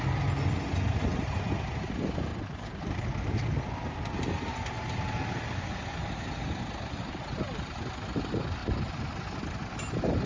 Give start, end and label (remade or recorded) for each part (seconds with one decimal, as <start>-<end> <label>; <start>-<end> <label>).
0.0-10.3 recorded